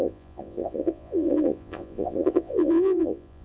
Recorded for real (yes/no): no